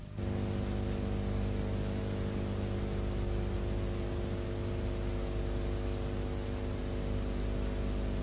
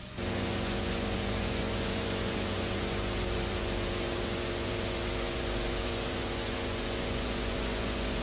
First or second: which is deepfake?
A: second